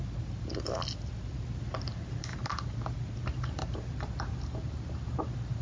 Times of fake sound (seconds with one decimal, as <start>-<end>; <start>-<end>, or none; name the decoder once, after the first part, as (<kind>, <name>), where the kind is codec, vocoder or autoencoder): 3.6-4.1 (vocoder, BigVGAN v2)